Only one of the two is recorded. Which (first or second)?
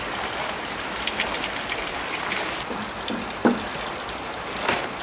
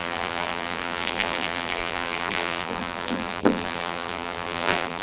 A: first